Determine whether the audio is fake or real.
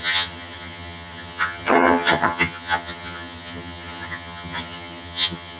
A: fake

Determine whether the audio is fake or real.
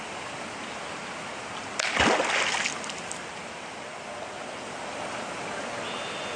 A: real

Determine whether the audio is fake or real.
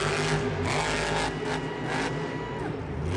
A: real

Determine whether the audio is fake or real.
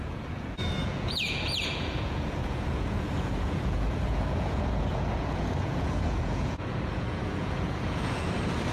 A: fake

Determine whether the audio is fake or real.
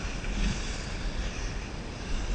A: real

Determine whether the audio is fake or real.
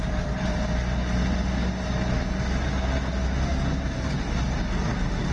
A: real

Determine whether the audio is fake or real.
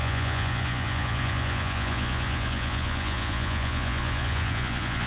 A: fake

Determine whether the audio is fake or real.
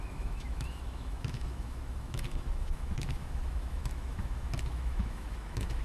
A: fake